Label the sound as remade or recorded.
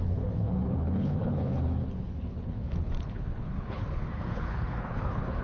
remade